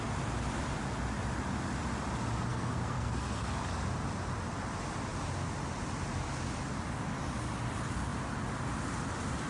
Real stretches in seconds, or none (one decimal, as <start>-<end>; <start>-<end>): 0.0-2.5; 3.6-9.5